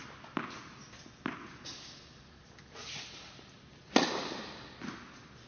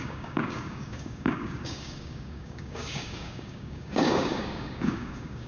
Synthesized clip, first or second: second